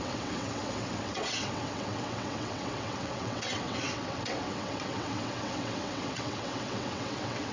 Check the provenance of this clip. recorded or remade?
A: remade